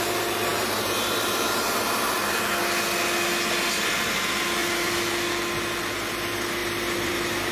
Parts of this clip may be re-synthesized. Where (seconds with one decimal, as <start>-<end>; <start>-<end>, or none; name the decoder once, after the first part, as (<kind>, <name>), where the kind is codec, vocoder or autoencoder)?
4.6-5.1 (vocoder, BigVGAN v2); 6.6-7.1